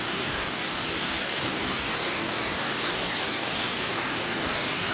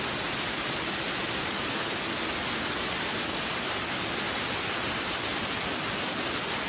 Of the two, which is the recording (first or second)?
second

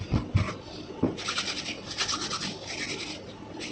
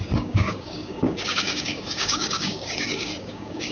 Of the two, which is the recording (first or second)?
first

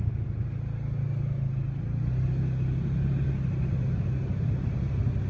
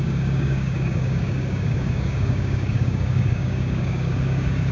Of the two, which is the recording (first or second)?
first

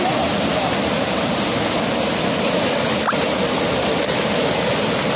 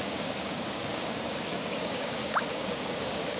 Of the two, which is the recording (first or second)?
first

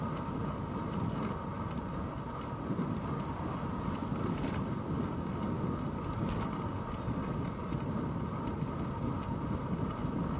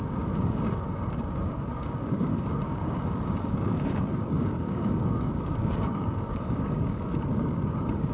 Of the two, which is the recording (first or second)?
first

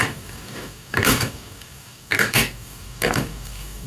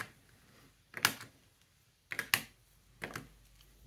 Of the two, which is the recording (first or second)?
second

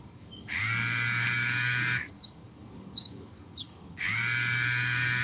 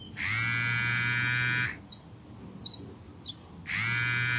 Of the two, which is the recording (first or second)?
second